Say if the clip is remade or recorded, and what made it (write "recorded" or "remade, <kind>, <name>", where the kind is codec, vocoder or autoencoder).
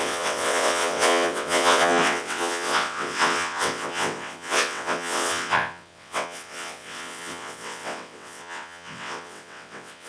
remade, vocoder, WaveNeXt